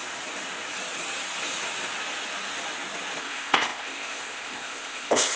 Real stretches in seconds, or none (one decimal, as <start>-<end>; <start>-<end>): 0.0-3.2